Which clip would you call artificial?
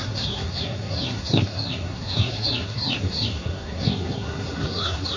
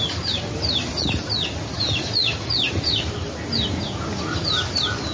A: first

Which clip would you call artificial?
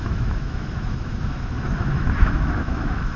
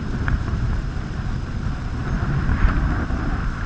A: first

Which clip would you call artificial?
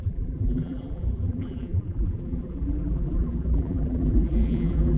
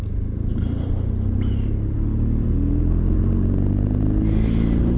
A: first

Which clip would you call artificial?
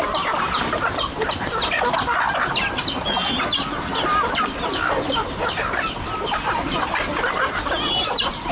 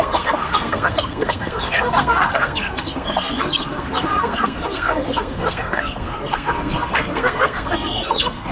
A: second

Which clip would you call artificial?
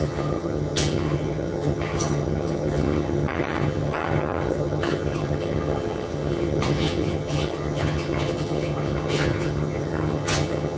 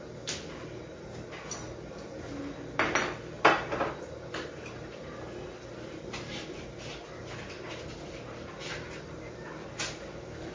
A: first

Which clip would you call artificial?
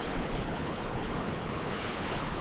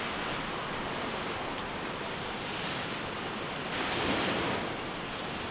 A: first